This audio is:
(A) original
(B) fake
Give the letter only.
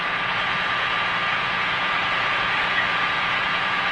B